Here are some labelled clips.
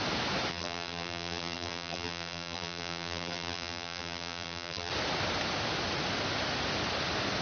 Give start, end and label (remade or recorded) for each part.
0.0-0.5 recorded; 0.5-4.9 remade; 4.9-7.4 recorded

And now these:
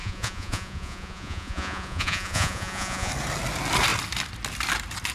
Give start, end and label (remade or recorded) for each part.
0.0-3.1 remade; 3.1-5.1 recorded

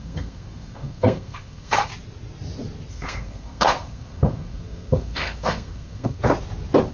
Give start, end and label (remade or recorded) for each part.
0.0-1.9 remade; 1.9-2.9 recorded; 2.9-6.2 remade; 6.2-6.9 recorded

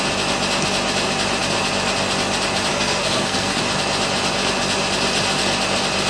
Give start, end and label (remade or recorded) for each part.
0.0-2.7 recorded; 2.7-3.6 remade; 3.6-6.1 recorded